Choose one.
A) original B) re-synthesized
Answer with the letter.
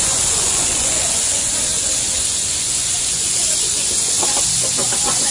B